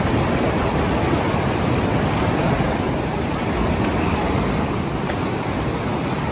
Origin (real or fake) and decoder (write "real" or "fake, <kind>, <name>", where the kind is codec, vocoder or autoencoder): real